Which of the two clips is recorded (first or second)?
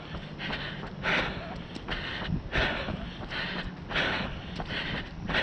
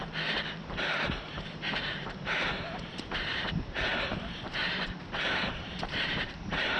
first